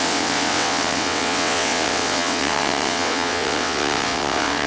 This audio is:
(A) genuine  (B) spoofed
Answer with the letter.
B